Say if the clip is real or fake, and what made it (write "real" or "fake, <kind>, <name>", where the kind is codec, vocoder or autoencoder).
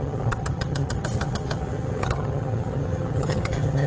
fake, vocoder, HiFi-GAN